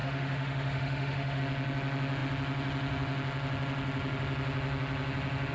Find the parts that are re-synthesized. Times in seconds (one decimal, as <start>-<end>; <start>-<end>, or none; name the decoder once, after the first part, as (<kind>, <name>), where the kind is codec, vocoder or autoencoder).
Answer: 0.0-1.4 (autoencoder, DAC-VAE)